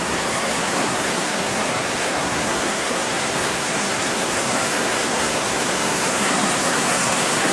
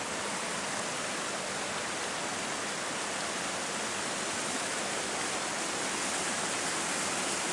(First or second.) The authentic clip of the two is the second